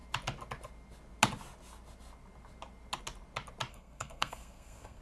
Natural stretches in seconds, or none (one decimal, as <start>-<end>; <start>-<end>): 0.0-3.7

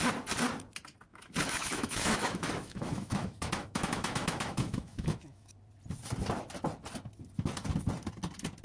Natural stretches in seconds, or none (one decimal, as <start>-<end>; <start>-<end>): 0.0-1.1; 5.5-8.6

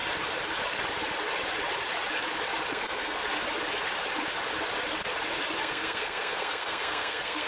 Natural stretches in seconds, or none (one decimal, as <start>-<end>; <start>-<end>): 0.0-2.7; 3.2-5.6

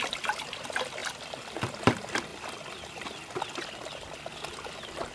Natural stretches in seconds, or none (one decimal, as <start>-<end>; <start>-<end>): 0.0-5.1

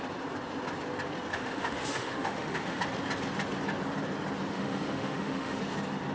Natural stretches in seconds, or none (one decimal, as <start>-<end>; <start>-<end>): 0.0-1.3; 2.8-4.5; 5.6-6.1